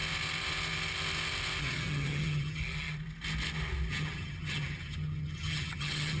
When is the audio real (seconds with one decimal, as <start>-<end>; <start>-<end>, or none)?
0.0-1.6; 2.6-3.9